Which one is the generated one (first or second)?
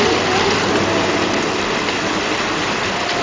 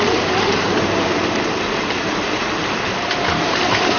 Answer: second